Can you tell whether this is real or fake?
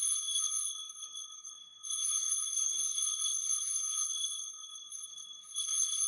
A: fake